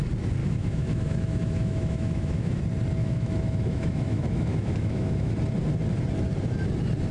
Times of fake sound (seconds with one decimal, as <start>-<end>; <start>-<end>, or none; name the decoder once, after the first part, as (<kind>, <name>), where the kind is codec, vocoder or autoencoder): 0.4-2.6 (autoencoder, DAC-VAE); 3.0-5.3